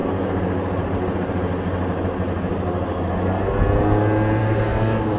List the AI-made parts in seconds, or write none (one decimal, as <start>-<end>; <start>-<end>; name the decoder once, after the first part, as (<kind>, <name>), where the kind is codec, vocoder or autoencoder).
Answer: 4.4-5.2 (codec, DAC)